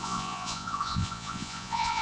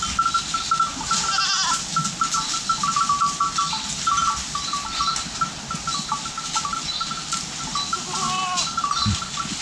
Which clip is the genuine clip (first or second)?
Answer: second